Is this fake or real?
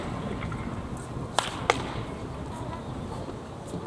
real